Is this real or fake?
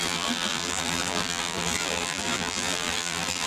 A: fake